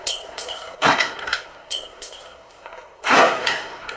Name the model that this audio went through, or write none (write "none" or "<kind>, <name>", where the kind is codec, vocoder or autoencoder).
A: codec, SNAC